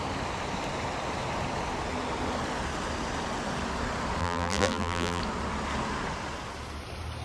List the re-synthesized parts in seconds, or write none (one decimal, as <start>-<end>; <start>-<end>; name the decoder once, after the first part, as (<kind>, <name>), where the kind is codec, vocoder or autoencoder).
4.2-5.2 (vocoder, BigVGAN v2)